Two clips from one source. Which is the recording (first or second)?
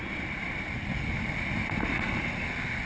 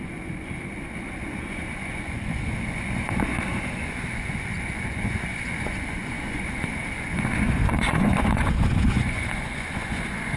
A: first